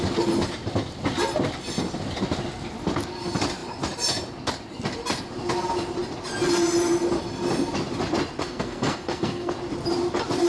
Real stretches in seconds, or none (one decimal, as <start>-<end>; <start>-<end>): 0.0-8.4; 9.5-10.5